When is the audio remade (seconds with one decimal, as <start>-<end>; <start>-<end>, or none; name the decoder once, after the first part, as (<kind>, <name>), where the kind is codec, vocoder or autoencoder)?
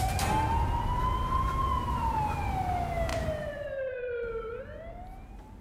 3.1-4.6 (vocoder, BigVGAN v2)